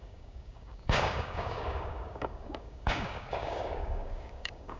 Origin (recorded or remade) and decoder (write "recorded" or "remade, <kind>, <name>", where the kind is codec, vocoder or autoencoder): remade, codec, DAC